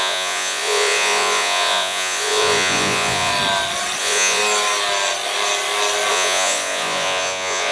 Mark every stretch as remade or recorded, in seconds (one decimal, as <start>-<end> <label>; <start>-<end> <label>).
0.0-3.3 remade; 3.3-4.0 recorded; 4.0-4.4 remade; 4.4-6.1 recorded; 6.1-7.7 remade